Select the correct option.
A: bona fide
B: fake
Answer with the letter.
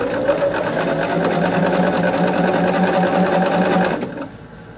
A